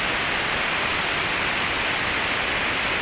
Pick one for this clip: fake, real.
real